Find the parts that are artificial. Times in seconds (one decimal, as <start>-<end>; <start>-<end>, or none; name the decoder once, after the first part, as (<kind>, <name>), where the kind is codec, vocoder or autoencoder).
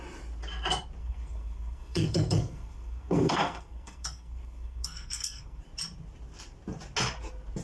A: 1.0-5.6 (codec, SNAC)